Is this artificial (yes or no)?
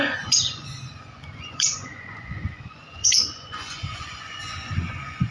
yes